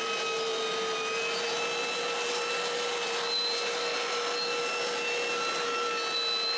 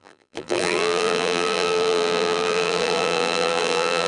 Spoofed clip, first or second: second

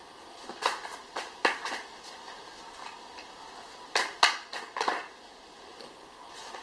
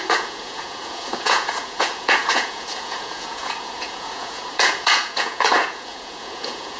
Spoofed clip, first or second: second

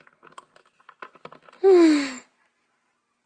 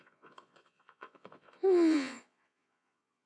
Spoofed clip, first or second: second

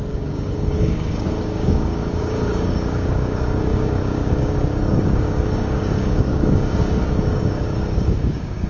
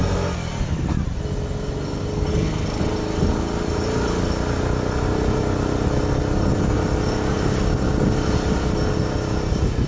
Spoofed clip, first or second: first